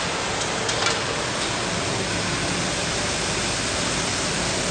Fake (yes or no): no